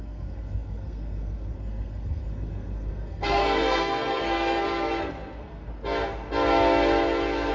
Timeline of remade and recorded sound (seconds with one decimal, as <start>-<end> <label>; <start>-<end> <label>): 0.0-5.7 remade; 5.7-7.5 recorded